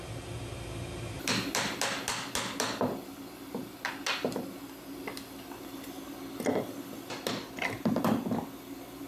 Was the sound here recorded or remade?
recorded